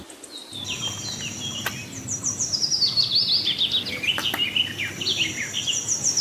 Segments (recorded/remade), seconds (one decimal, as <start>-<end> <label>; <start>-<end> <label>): 0.0-6.2 recorded